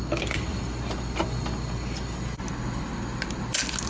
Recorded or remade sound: recorded